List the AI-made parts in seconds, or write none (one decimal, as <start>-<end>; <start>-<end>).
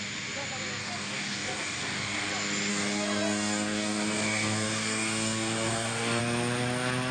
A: 0.8-2.3; 2.7-6.2